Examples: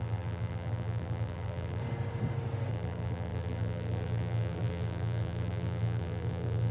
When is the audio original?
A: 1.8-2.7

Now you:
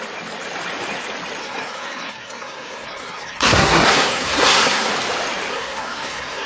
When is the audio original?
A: 0.0-1.4; 4.9-5.5

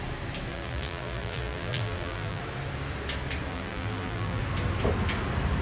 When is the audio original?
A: 0.0-0.5; 2.4-3.5; 4.4-5.6

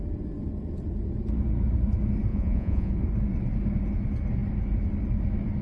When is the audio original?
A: 0.0-2.3; 2.9-5.6

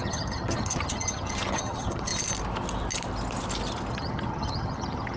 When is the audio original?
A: 2.1-3.9

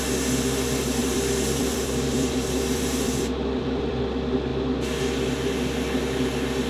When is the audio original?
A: 0.0-1.0; 4.0-6.7

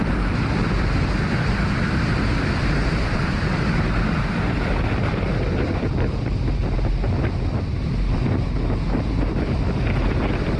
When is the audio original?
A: 6.6-9.3